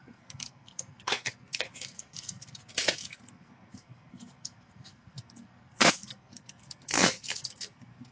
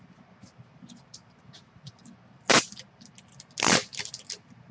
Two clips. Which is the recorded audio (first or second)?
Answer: second